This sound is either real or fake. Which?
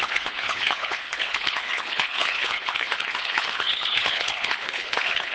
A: fake